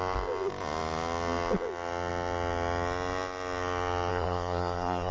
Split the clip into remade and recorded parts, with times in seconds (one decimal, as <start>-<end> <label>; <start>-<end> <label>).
0.0-4.1 recorded; 4.1-5.1 remade